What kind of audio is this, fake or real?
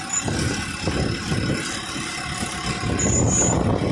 real